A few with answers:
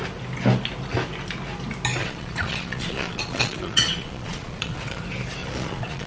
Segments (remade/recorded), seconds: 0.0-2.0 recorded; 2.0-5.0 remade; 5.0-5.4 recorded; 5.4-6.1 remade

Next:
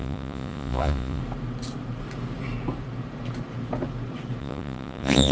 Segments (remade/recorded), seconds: 0.0-1.2 remade; 1.2-4.4 recorded; 4.4-5.3 remade

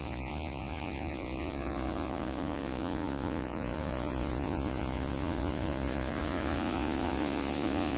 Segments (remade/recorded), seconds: 0.0-8.0 remade